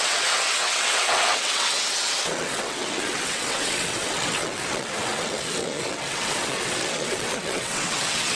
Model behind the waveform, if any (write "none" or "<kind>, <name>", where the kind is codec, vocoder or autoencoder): vocoder, WaveNeXt